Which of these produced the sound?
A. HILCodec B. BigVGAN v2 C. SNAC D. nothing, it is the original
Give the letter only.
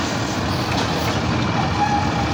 D